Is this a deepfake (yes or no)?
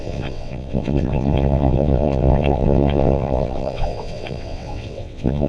yes